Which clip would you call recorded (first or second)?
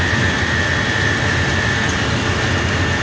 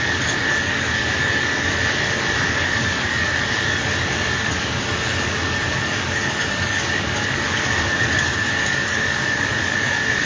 first